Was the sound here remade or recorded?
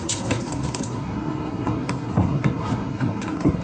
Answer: remade